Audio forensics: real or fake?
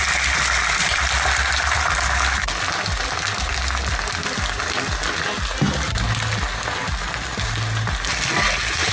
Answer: real